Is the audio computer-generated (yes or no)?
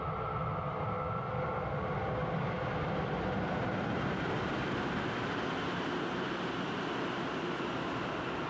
no